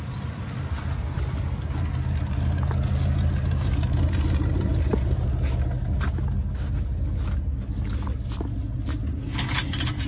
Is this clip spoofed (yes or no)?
no